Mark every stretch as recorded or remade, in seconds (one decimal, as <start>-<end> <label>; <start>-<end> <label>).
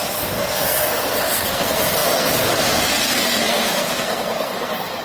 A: 0.0-5.0 remade